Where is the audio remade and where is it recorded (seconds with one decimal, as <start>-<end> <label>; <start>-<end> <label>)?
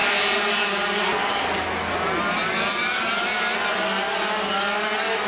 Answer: 0.0-5.3 recorded